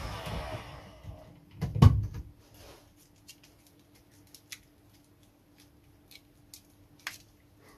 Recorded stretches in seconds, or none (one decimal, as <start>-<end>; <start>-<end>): 0.0-7.8

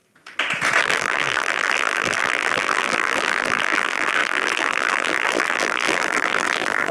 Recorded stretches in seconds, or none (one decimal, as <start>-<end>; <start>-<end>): 0.0-0.8

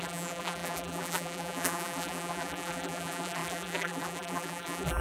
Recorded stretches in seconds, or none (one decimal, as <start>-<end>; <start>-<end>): none